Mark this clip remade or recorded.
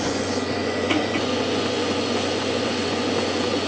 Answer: remade